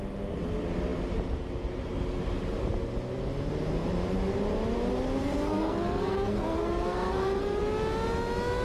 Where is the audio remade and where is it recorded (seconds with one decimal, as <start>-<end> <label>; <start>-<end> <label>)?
0.0-5.2 recorded; 5.2-7.6 remade; 7.6-8.6 recorded